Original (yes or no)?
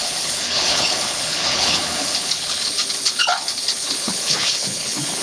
no